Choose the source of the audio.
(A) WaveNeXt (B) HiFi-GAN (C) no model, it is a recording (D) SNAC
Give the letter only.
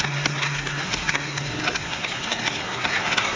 D